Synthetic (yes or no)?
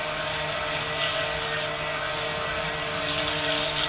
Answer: no